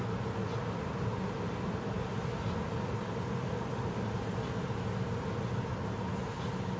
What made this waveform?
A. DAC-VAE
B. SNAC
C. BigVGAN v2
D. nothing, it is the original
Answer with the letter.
D